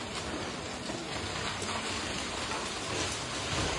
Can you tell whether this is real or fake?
real